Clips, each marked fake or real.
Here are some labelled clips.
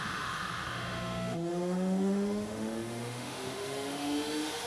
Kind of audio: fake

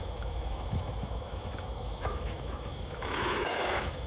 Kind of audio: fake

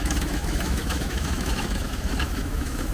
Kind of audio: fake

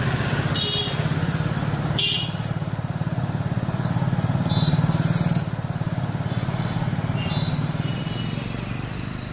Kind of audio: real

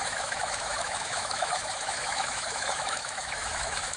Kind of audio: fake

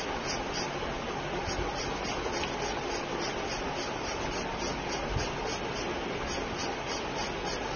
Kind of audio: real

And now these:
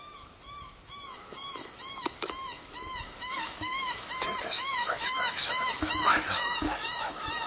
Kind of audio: fake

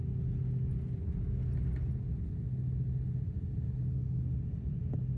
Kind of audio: real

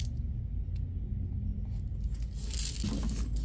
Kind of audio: real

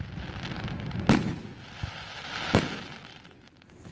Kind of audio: real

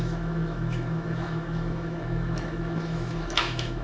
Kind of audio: fake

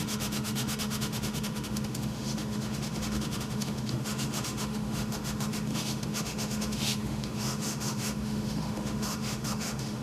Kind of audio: fake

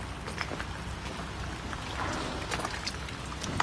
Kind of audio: real